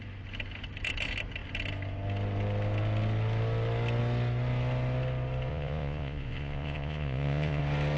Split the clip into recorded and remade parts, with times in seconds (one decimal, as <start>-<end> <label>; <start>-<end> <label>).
0.0-5.5 recorded; 5.5-7.6 remade; 7.6-8.0 recorded